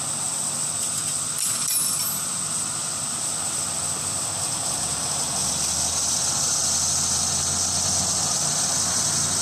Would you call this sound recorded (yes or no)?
yes